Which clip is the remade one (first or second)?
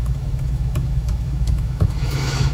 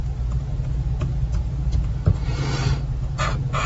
first